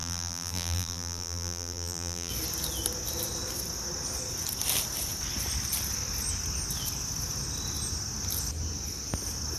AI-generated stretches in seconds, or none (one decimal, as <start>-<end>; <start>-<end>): 0.0-2.3